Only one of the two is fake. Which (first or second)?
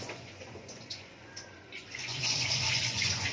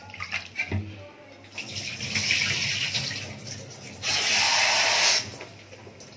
first